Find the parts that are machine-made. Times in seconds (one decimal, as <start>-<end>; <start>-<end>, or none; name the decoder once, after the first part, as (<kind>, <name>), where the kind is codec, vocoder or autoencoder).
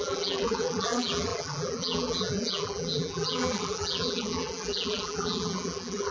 0.0-6.1 (vocoder, BigVGAN v2)